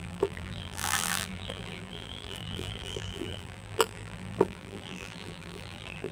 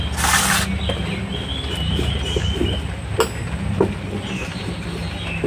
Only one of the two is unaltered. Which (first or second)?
second